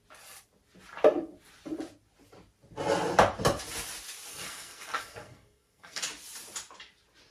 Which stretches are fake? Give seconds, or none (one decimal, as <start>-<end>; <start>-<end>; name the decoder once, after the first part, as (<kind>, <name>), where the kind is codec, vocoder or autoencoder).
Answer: 4.3-6.0 (codec, SNAC)